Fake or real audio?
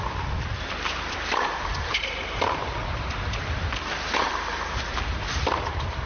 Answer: fake